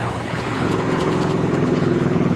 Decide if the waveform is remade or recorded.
remade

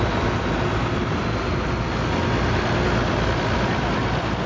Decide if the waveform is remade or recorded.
recorded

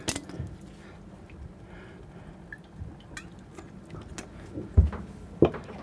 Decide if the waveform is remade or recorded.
recorded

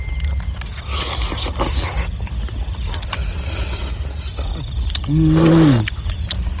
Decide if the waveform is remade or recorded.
recorded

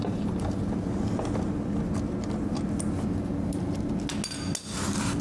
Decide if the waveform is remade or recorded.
recorded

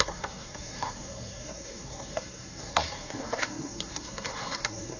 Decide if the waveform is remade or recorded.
remade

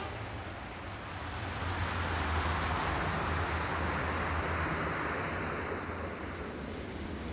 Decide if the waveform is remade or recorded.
recorded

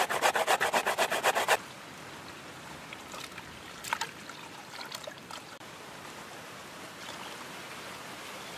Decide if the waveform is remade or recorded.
remade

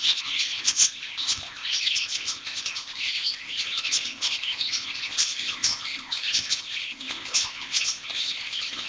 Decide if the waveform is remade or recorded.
remade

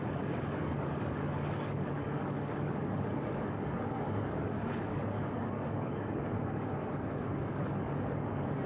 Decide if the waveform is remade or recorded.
remade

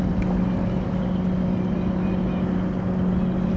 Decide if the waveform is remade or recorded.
recorded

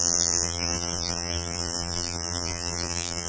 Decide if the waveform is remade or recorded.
remade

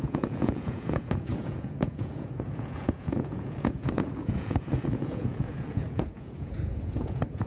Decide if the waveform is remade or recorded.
remade